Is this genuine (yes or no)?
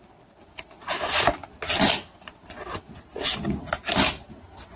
yes